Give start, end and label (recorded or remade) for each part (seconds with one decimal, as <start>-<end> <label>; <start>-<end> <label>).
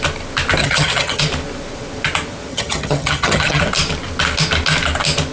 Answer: 0.0-0.6 recorded; 0.6-1.2 remade; 1.2-2.5 recorded; 2.5-3.6 remade; 3.6-5.3 recorded